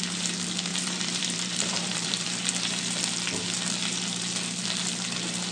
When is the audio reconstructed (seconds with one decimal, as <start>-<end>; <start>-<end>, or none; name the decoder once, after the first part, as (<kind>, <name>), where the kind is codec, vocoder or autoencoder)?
0.7-2.5 (vocoder, BigVGAN v2)